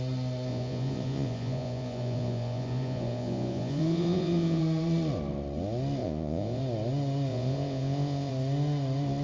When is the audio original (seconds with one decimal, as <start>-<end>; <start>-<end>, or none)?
0.0-0.5; 4.6-6.0; 6.6-7.3; 8.3-9.2